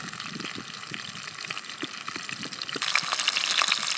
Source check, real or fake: real